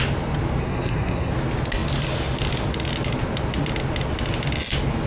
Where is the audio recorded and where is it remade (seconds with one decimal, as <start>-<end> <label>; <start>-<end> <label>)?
0.0-0.6 recorded; 0.6-1.3 remade; 1.3-5.1 recorded